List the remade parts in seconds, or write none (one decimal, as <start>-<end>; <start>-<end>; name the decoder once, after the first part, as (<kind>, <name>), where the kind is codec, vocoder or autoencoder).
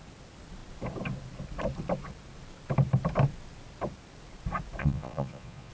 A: 4.8-5.7 (vocoder, Vocos)